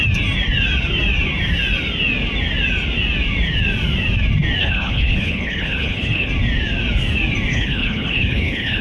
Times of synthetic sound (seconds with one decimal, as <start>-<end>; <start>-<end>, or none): 4.6-6.3; 7.5-8.8